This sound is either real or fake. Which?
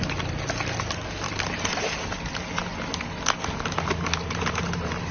real